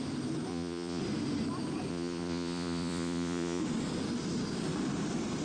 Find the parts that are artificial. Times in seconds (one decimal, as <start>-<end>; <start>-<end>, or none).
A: 0.5-1.0; 1.9-3.6